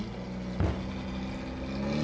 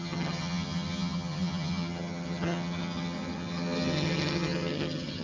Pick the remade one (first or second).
second